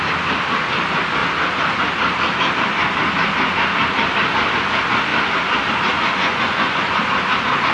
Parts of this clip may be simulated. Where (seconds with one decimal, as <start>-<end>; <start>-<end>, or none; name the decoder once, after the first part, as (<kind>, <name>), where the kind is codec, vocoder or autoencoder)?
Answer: 6.2-7.0 (vocoder, Vocos)